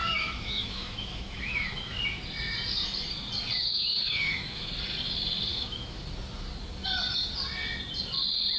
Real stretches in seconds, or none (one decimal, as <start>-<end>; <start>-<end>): 2.2-3.6; 4.7-5.5; 6.0-8.6